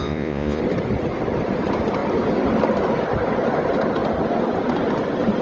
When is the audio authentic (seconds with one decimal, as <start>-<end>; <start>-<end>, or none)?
0.6-5.4